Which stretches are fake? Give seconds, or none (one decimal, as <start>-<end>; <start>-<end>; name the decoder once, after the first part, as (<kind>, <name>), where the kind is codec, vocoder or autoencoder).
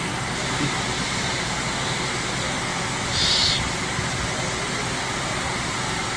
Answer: none